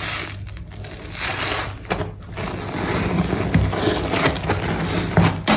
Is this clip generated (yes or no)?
no